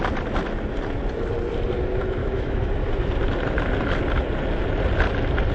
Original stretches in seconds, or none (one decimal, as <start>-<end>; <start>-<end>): 0.0-2.2; 2.7-5.5